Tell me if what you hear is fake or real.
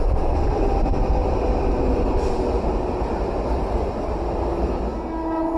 real